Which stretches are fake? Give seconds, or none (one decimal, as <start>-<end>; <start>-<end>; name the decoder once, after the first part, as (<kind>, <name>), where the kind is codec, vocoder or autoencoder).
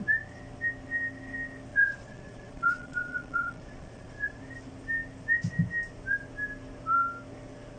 1.7-4.4 (vocoder, Vocos)